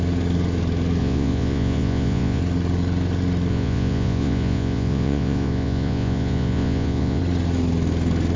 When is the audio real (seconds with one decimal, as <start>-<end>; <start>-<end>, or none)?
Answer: 0.0-1.0; 2.4-3.5; 7.2-8.4